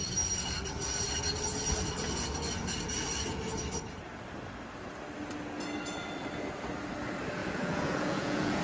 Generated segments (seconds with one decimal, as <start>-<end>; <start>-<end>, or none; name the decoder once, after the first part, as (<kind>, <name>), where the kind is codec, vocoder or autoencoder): 7.4-8.6 (vocoder, Vocos)